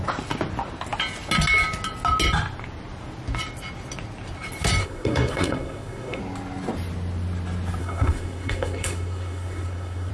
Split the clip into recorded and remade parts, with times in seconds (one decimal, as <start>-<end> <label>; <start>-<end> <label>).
0.0-4.8 recorded; 4.8-6.2 remade; 6.2-7.8 recorded; 7.8-10.1 remade